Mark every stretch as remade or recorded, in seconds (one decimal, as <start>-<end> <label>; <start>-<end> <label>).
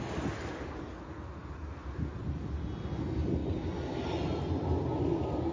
0.0-5.5 recorded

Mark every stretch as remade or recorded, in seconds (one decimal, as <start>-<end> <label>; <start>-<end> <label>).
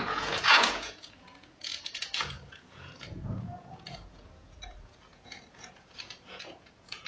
0.0-7.1 remade